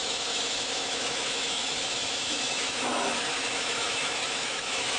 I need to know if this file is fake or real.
fake